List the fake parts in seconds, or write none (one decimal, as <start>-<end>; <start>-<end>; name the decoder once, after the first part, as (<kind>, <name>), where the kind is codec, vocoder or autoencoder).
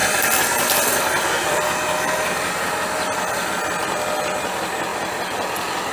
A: 0.0-3.5 (vocoder, BigVGAN v2); 4.9-5.9